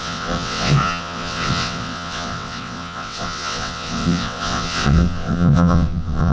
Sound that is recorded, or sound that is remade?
remade